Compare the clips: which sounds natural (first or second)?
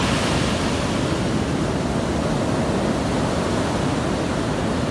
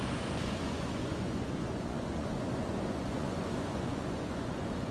first